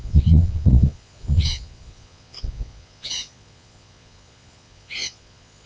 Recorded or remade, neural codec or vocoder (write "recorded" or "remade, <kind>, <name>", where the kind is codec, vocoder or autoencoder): remade, vocoder, Vocos